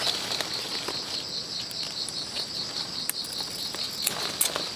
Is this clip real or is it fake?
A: real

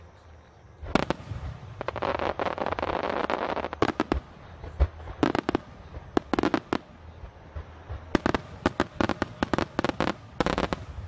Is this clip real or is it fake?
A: real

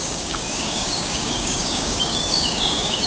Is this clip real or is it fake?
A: fake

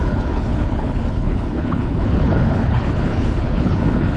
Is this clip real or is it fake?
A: fake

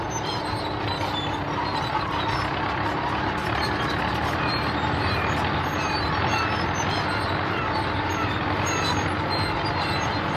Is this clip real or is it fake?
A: real